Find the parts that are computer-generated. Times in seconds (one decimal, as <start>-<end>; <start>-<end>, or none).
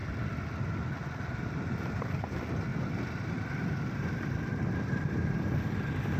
none